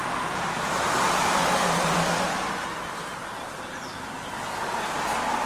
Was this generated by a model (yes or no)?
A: no